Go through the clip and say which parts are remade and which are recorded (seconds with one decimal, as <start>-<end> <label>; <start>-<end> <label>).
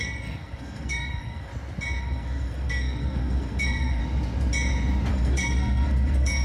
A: 0.0-1.5 remade; 1.5-2.0 recorded; 2.0-4.0 remade; 4.0-5.1 recorded; 5.1-6.4 remade